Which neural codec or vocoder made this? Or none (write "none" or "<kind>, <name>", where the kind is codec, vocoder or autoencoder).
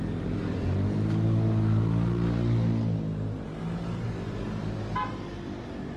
none